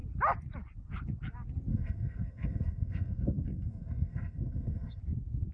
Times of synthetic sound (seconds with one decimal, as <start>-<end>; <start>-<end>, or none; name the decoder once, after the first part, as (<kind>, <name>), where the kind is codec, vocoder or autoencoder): 1.7-5.0 (codec, SNAC)